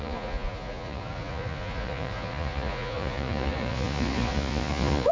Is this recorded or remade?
remade